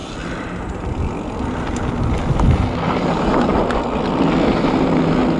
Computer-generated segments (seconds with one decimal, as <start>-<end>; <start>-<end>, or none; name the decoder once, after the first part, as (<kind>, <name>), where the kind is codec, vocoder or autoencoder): none